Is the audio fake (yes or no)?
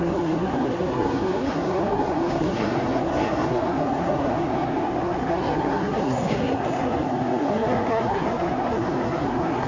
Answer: yes